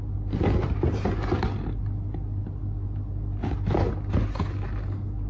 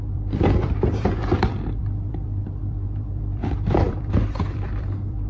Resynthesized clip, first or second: second